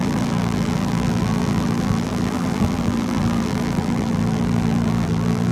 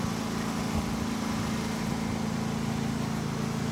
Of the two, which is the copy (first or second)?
first